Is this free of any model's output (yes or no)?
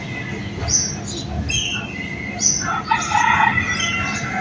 yes